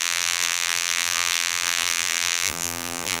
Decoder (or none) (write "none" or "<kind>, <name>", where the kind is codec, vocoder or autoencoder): vocoder, BigVGAN v2